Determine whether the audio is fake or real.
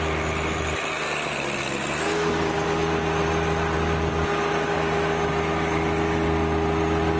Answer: real